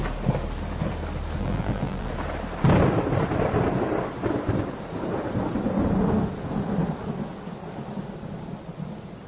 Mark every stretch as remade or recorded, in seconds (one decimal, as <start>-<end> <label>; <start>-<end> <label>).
0.0-1.4 recorded; 1.4-2.1 remade; 2.1-9.3 recorded